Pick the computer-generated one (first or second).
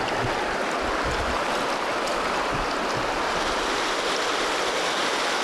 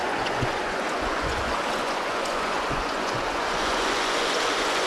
second